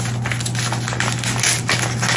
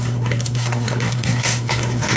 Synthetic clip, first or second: second